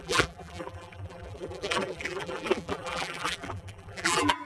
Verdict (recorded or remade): remade